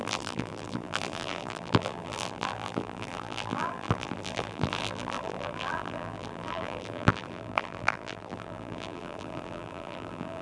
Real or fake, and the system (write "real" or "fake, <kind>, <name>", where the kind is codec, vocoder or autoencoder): fake, vocoder, BigVGAN v2